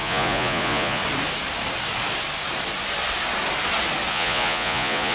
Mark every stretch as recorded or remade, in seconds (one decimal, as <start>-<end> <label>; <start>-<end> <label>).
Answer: 0.0-1.0 remade; 1.0-4.1 recorded; 4.1-5.1 remade